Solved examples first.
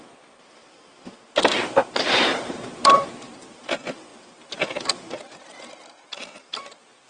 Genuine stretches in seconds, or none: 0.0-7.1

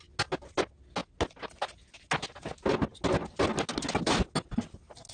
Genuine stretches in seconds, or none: 0.0-5.1

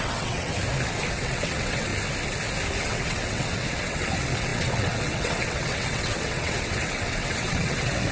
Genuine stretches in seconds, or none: 0.5-1.1; 1.9-2.8

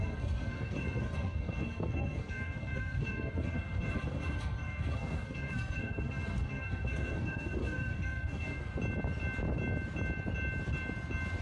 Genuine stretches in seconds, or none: 8.7-11.4